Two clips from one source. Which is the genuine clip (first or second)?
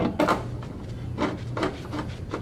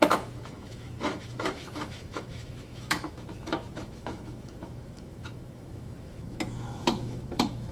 first